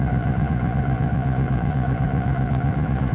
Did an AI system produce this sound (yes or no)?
yes